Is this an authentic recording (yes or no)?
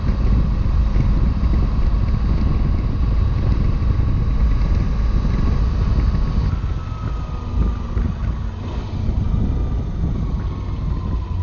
yes